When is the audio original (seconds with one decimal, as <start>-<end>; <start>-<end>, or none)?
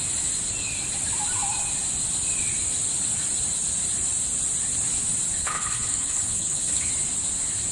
0.0-5.4; 6.9-7.7